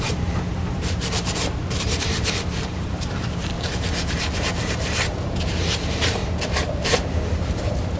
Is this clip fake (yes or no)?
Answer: yes